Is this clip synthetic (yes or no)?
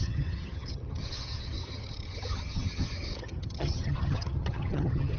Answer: yes